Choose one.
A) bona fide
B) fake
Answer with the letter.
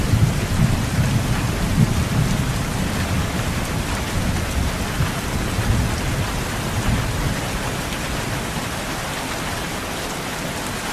A